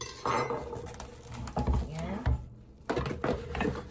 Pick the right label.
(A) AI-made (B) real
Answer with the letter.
B